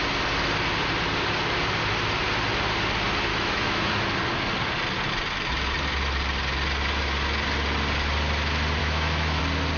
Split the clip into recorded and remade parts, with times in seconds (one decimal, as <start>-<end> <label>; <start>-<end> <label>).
0.0-3.3 recorded; 3.3-3.9 remade; 3.9-8.8 recorded; 8.8-9.4 remade; 9.4-9.8 recorded